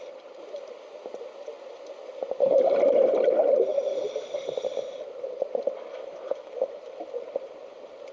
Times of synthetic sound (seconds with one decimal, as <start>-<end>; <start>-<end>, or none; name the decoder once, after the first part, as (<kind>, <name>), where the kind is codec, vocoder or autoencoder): 5.9-7.0 (autoencoder, DAC-VAE)